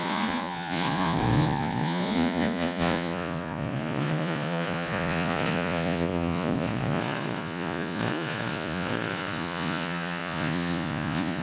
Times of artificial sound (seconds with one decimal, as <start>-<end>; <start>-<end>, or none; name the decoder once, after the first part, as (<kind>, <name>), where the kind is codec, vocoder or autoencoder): 0.0-11.4 (vocoder, Vocos)